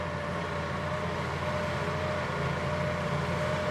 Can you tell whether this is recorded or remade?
recorded